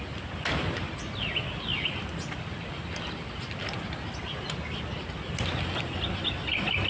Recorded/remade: recorded